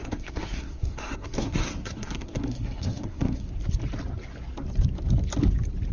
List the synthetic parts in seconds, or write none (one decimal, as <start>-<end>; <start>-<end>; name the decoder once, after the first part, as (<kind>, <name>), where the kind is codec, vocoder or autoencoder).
0.0-3.5 (codec, SNAC)